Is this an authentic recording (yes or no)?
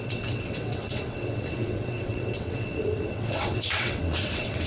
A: no